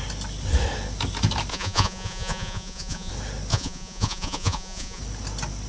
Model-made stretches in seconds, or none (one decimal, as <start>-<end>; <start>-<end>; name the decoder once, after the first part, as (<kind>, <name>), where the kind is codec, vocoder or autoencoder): 1.5-3.1 (vocoder, Vocos); 3.5-5.0